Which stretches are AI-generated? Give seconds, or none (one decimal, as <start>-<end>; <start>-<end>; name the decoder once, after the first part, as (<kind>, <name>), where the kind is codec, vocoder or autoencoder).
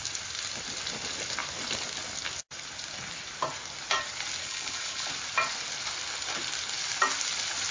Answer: 4.4-5.1 (codec, HILCodec)